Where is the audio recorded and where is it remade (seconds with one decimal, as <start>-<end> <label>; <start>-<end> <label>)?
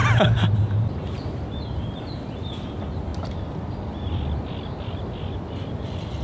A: 0.0-6.2 recorded